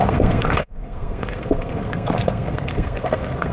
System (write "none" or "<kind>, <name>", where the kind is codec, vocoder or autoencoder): codec, SNAC